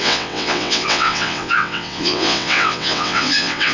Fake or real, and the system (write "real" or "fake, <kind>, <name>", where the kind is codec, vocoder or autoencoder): fake, vocoder, WaveNeXt